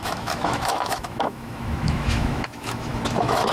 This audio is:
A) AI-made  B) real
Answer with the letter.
A